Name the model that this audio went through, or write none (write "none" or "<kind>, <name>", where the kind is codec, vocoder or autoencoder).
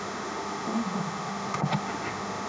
autoencoder, DAC-VAE